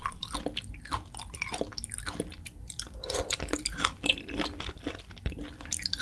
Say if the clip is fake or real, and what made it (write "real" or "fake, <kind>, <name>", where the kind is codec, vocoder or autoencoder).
real